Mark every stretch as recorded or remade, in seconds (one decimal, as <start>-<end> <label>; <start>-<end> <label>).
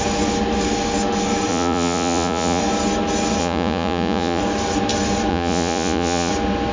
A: 0.0-1.5 recorded; 1.5-2.6 remade; 2.6-3.4 recorded; 3.4-4.4 remade; 4.4-5.3 recorded; 5.3-6.3 remade; 6.3-6.7 recorded